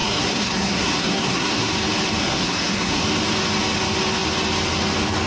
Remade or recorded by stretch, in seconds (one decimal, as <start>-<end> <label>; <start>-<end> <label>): 0.0-1.7 remade; 1.7-2.2 recorded; 2.2-3.0 remade; 3.0-5.3 recorded